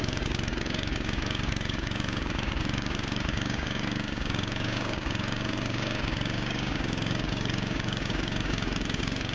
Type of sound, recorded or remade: remade